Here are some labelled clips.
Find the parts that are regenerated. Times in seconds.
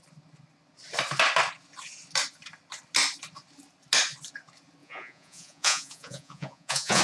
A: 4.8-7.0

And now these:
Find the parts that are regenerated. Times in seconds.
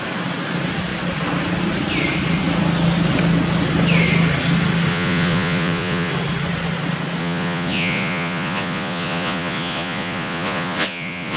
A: 4.9-6.1; 7.2-11.4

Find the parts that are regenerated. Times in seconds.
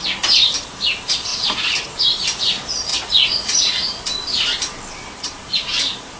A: 2.9-4.0